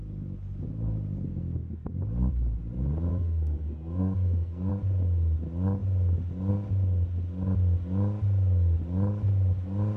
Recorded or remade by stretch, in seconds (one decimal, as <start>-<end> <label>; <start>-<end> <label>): 0.0-1.3 recorded; 1.3-1.9 remade; 1.9-3.1 recorded; 3.1-4.7 remade; 4.7-10.0 recorded